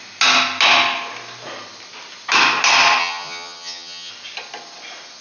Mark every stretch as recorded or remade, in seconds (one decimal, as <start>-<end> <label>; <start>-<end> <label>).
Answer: 0.0-3.0 recorded; 3.0-4.1 remade; 4.1-5.2 recorded